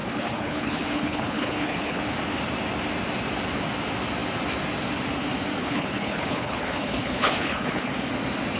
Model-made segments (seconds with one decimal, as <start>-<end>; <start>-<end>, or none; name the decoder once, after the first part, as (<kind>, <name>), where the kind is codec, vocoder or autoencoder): 0.0-2.0 (codec, HILCodec); 5.6-7.9